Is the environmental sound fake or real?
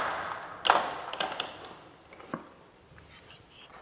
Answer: real